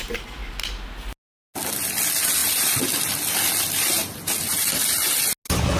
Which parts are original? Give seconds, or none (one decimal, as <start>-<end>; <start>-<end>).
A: 0.0-5.8